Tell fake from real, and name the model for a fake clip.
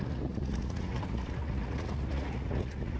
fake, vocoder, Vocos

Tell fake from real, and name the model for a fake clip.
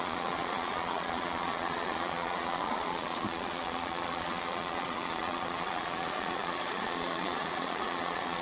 fake, vocoder, Vocos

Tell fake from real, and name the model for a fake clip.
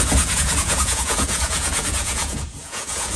fake, vocoder, Vocos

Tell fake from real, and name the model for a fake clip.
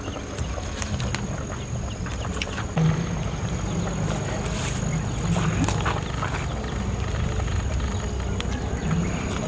real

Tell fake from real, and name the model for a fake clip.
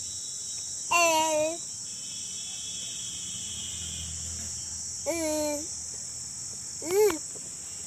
real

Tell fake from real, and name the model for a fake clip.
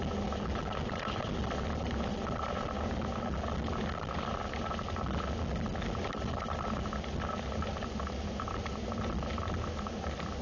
real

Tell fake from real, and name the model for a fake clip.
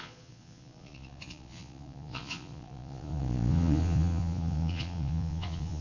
fake, vocoder, Vocos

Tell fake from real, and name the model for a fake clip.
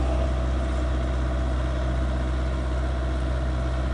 real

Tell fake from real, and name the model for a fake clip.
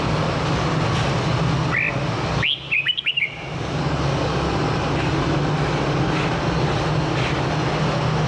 real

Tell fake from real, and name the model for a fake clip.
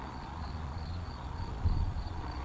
fake, vocoder, Vocos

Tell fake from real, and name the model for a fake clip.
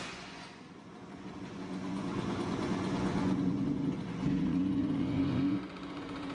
fake, vocoder, Vocos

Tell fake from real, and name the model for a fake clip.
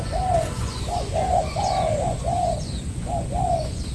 fake, vocoder, Vocos